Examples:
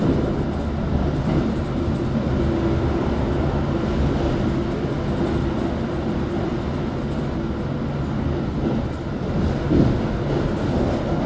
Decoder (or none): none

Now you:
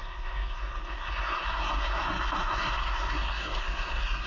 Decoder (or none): codec, SNAC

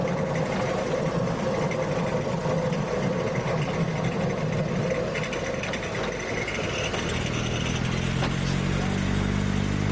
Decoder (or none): none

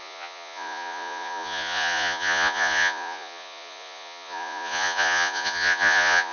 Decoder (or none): vocoder, Vocos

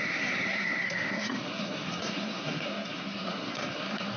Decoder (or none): codec, SNAC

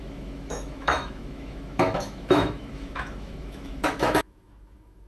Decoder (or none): autoencoder, DAC-VAE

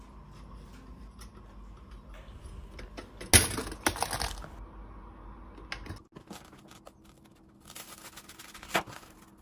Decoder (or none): none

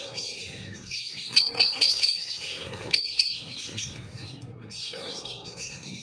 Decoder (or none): codec, SNAC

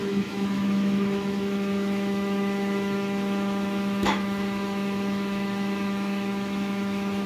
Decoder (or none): autoencoder, DAC-VAE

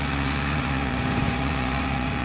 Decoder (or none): vocoder, Vocos